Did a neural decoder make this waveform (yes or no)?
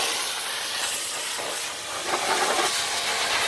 yes